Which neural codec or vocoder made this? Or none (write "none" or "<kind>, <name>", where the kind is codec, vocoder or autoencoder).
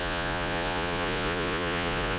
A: vocoder, Vocos